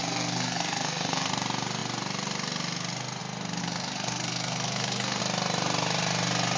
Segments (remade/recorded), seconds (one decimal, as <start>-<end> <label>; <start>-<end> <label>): 0.0-1.3 remade; 1.3-3.6 recorded; 3.6-5.2 remade; 5.2-6.6 recorded